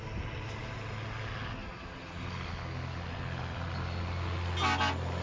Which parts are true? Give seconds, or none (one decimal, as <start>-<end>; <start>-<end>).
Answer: 0.0-5.2

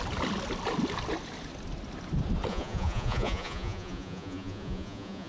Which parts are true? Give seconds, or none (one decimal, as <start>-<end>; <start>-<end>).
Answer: 0.0-2.5